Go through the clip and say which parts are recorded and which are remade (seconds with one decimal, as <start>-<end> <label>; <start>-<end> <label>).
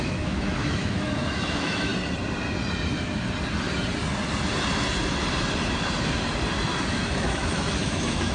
0.0-1.9 remade; 1.9-6.9 recorded; 6.9-8.3 remade